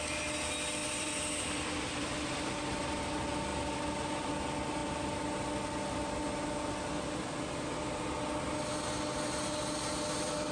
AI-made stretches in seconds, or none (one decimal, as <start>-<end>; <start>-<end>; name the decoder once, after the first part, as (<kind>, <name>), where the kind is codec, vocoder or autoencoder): 0.8-2.1 (vocoder, BigVGAN v2)